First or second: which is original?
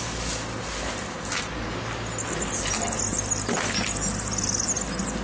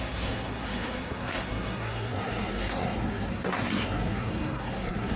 first